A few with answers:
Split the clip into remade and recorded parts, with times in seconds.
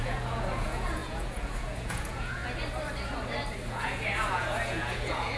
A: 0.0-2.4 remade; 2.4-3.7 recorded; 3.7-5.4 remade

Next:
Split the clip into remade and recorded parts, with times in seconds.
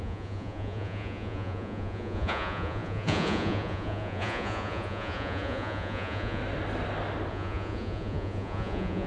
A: 0.0-6.4 remade; 6.4-7.3 recorded; 7.3-9.1 remade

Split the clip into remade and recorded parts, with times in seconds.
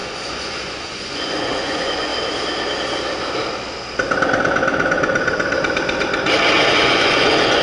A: 0.0-2.1 remade; 2.1-6.7 recorded; 6.7-7.6 remade